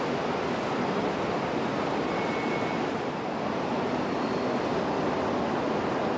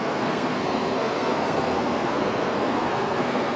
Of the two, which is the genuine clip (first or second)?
first